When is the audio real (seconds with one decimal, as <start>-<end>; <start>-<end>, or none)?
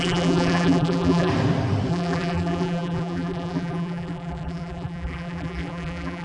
1.3-1.9